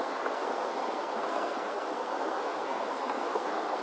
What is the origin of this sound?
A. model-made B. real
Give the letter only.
A